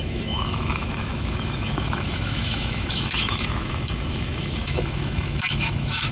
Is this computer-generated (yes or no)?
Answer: yes